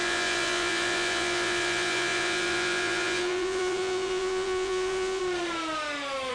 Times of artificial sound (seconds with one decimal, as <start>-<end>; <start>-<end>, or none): 0.0-5.2